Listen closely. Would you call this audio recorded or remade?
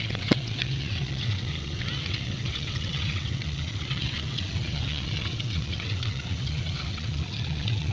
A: remade